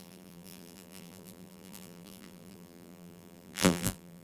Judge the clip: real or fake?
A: fake